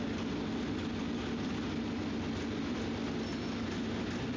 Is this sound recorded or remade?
recorded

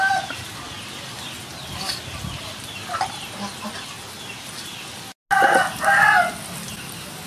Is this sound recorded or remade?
recorded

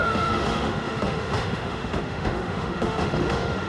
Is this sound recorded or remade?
remade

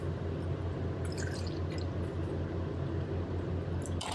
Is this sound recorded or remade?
recorded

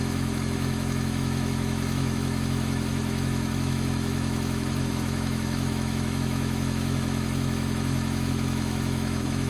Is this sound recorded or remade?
remade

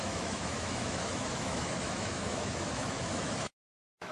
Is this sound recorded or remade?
remade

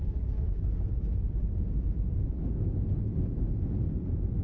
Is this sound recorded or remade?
recorded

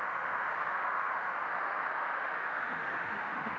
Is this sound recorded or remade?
remade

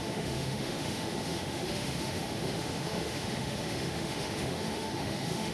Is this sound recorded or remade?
remade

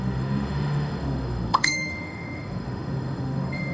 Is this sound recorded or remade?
remade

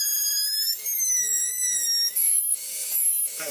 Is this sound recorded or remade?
remade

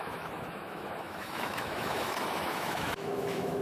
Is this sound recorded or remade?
remade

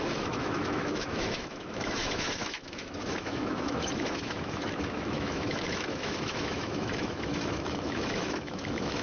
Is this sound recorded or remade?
remade